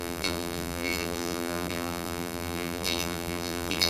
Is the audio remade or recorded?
remade